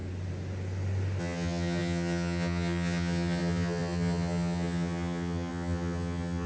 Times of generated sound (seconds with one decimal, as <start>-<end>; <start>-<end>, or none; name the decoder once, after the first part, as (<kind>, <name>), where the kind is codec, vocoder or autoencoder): 1.2-6.5 (vocoder, HiFi-GAN)